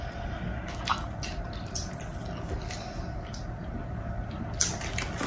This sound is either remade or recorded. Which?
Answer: recorded